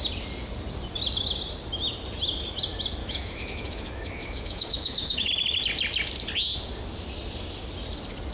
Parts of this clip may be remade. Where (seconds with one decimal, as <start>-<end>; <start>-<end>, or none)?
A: 3.0-5.3